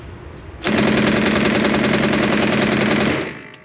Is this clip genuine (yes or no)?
yes